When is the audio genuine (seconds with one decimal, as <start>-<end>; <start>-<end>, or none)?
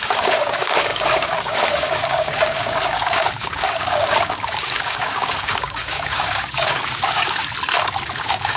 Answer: 7.4-8.2